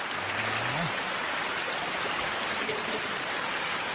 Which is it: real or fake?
real